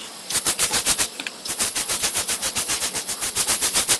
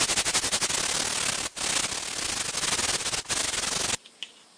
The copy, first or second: first